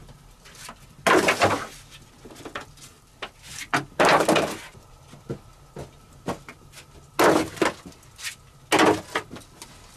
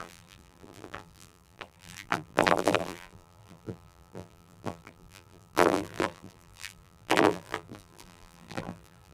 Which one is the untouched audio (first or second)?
first